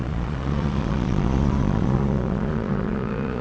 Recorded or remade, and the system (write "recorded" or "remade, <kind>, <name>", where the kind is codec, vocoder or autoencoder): remade, vocoder, Vocos